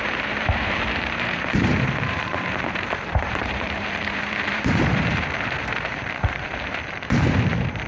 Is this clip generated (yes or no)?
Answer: yes